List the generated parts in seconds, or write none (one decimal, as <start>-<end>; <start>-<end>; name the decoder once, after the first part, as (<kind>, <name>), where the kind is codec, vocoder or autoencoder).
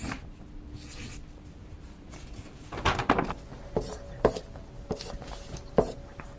1.6-2.8 (vocoder, BigVGAN v2)